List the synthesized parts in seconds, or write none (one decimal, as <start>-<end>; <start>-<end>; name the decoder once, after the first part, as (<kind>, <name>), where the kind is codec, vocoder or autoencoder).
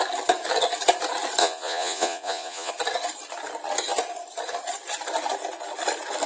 1.4-2.7 (vocoder, Vocos)